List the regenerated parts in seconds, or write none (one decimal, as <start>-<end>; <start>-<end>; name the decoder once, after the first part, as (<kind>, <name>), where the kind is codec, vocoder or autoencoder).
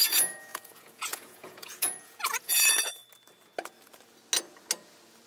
0.0-3.0 (vocoder, Vocos)